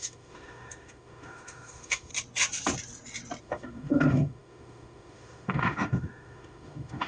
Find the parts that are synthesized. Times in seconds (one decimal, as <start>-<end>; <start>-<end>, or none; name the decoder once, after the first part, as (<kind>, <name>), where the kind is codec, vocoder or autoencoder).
0.0-2.1 (autoencoder, DAC-VAE); 3.4-7.1